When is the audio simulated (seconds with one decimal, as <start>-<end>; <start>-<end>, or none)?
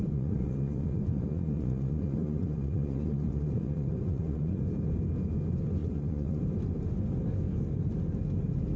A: 0.0-4.6; 5.8-6.4